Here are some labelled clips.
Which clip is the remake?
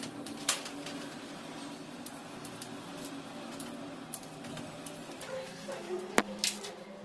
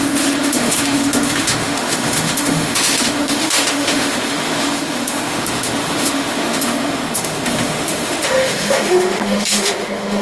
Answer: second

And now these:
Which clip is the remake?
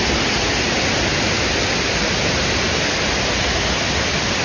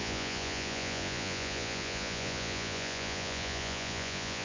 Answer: second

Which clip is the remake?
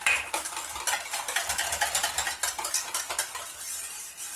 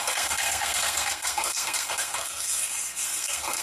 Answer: second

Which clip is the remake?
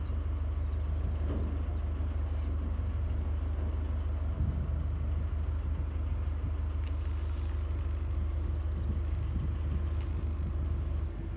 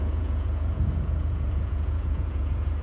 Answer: second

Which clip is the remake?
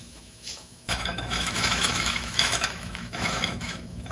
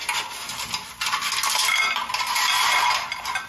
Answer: first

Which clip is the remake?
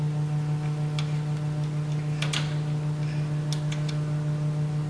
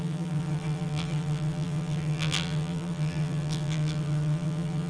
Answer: second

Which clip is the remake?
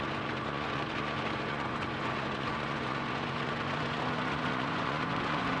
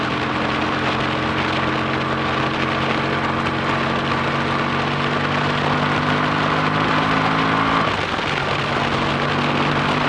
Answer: first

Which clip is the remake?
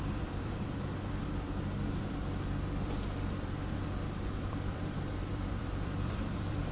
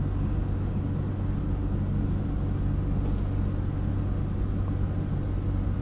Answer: first